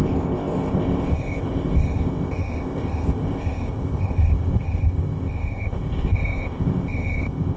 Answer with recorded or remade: remade